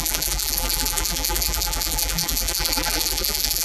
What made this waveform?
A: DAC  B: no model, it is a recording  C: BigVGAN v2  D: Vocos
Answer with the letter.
C